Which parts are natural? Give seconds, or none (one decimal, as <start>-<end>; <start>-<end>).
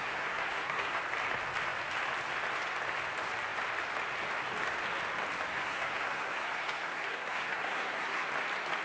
1.0-5.5; 8.3-8.8